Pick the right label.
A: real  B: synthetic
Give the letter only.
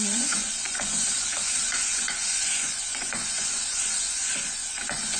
B